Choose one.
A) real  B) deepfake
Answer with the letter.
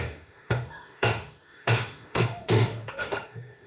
B